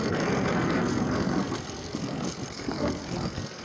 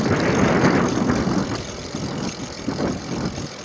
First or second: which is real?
second